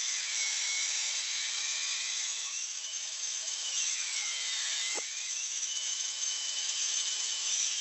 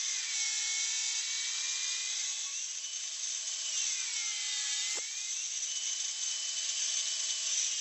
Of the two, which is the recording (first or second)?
second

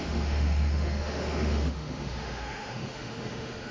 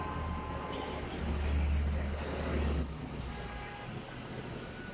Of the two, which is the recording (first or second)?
second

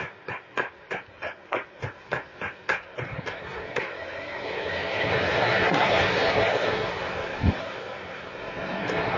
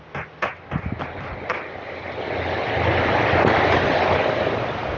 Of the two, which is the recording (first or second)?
second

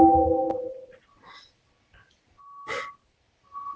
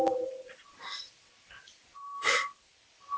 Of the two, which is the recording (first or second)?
first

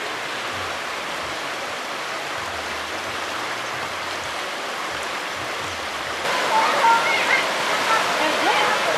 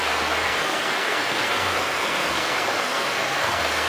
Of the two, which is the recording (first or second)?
first